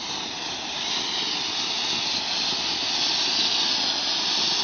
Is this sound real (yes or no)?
yes